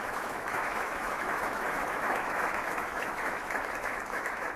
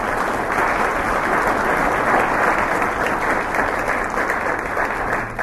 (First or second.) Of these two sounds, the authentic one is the second